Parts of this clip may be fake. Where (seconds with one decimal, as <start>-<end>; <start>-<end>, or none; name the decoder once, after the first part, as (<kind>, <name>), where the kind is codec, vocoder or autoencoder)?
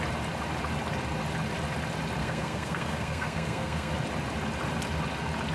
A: 2.2-3.9 (codec, SNAC)